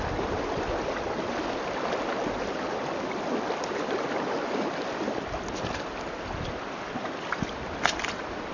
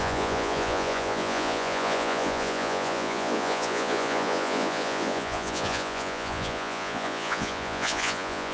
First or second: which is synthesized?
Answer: second